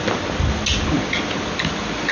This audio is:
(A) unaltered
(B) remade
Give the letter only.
A